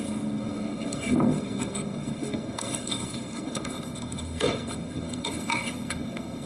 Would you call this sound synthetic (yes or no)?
yes